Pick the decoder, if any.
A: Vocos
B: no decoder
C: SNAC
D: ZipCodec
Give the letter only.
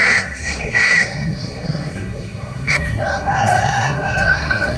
C